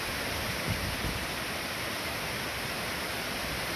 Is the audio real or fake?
real